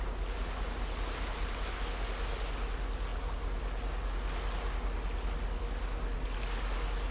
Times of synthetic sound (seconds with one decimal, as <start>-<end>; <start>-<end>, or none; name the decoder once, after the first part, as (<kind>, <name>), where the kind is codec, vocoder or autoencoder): none